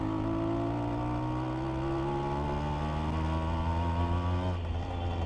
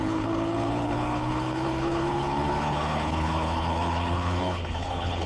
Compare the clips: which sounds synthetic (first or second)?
second